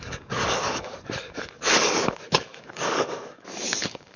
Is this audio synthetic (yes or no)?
yes